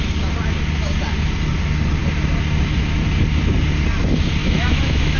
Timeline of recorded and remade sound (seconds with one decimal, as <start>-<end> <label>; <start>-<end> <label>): 0.0-4.4 recorded; 4.4-5.2 remade